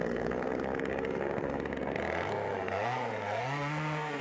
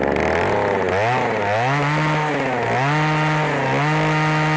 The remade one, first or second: first